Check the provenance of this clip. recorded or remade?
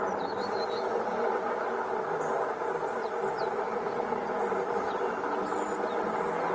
recorded